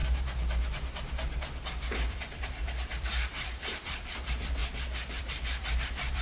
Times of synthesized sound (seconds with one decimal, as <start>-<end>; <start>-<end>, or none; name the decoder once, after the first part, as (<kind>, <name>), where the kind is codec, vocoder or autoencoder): 2.1-4.6 (vocoder, BigVGAN v2); 5.2-6.2